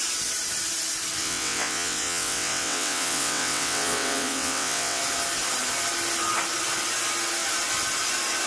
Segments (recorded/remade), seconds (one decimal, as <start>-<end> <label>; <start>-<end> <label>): 0.0-1.2 recorded; 1.2-5.0 remade; 5.0-8.5 recorded